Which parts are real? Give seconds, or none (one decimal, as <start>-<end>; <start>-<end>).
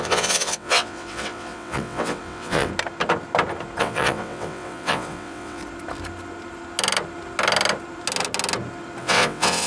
2.7-3.8; 5.6-9.0